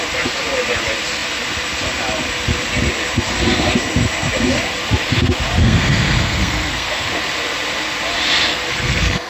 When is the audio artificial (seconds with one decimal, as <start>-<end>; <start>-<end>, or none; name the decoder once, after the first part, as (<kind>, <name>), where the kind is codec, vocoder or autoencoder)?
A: 5.6-7.1 (codec, SNAC); 8.5-9.3

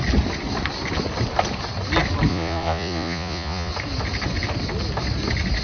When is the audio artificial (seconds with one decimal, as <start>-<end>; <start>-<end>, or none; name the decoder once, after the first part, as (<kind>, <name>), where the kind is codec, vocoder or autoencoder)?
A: 2.3-3.7 (vocoder, Vocos)

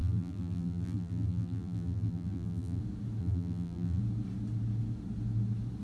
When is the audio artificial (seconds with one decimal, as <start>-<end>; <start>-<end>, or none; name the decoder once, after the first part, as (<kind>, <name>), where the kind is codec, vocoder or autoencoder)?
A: 0.0-2.8 (vocoder, BigVGAN v2); 3.2-4.0

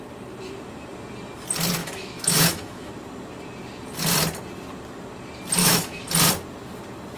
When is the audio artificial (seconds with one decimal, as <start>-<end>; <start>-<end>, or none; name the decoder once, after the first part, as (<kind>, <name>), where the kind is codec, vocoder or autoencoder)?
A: 1.8-2.9 (autoencoder, DAC-VAE); 5.6-6.1

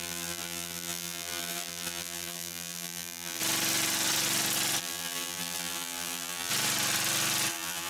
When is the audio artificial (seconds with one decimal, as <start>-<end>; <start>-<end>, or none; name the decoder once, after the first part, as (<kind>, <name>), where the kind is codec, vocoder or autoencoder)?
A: 0.0-3.4 (vocoder, BigVGAN v2); 4.8-6.5; 7.5-7.9

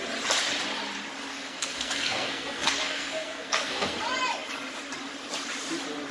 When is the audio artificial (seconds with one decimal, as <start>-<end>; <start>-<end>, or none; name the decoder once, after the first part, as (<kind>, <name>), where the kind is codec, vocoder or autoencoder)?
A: 1.3-4.0 (codec, SNAC)

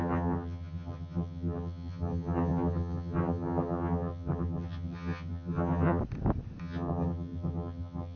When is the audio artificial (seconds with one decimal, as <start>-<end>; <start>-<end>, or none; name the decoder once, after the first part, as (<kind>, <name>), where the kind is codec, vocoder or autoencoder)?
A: 0.0-6.0 (vocoder, HiFi-GAN); 6.6-8.2